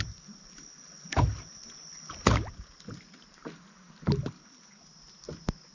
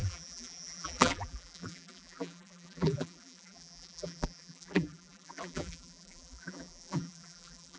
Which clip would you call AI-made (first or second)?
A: second